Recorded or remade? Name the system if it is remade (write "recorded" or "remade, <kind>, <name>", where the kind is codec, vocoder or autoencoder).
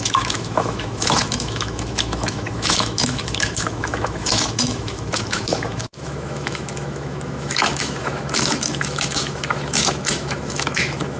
remade, autoencoder, DAC-VAE